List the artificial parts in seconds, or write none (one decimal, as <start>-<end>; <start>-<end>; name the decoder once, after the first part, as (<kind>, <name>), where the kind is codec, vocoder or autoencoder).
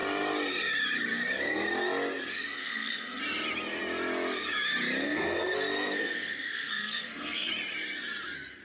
2.3-3.2 (codec, SNAC); 5.0-7.5